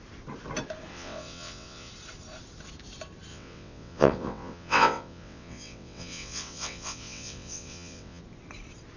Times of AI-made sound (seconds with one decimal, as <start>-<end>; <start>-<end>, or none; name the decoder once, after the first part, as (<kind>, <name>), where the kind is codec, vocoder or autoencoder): 0.9-1.9 (vocoder, WaveNeXt); 3.3-8.2